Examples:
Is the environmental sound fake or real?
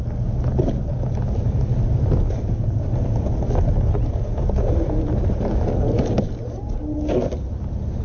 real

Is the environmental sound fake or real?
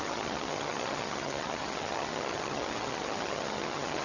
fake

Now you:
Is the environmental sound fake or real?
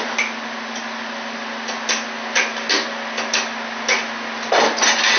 real